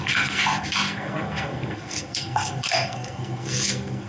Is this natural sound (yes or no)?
no